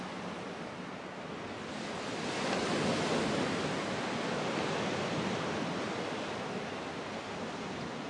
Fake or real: real